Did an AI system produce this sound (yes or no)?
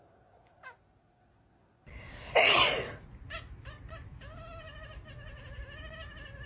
no